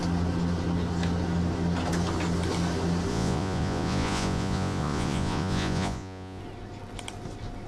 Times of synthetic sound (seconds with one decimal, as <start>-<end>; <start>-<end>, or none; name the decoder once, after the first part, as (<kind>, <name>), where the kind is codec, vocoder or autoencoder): 3.1-6.4 (vocoder, Vocos)

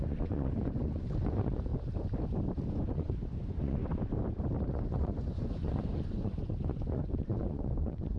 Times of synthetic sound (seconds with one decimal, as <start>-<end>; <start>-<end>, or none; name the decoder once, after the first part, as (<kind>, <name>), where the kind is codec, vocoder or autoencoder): 0.0-1.7 (vocoder, Vocos); 2.7-3.8; 4.7-8.2

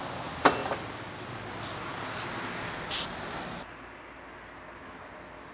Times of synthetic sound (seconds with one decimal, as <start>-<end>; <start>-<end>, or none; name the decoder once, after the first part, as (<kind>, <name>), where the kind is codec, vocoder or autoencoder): none

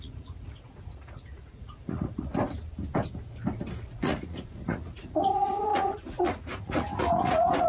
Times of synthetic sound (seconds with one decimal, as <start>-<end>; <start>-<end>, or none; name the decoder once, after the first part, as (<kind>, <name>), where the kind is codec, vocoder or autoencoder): 0.0-2.3 (vocoder, Vocos); 3.9-7.7